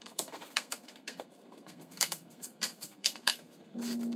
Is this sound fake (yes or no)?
yes